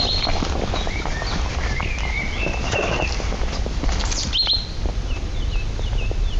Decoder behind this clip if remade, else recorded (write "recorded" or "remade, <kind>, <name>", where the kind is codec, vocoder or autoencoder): recorded